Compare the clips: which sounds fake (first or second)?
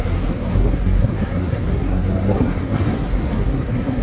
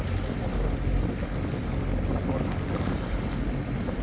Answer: first